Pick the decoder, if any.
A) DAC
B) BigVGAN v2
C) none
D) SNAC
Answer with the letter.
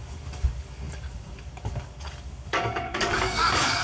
A